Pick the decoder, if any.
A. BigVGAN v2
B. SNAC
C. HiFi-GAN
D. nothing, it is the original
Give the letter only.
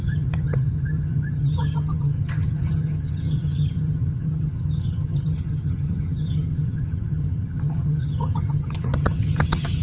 C